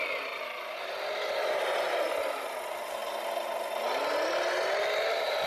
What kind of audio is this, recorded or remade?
recorded